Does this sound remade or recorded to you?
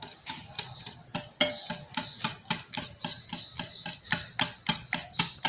recorded